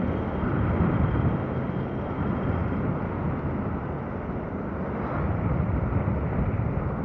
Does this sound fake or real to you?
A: real